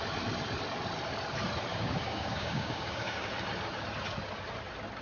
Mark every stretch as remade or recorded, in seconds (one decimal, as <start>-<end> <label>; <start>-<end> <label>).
0.0-1.7 recorded; 1.7-3.3 remade; 3.3-5.0 recorded